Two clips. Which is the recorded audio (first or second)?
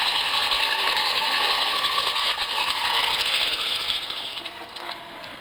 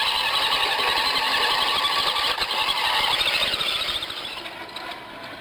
second